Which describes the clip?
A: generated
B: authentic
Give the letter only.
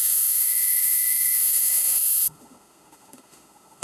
A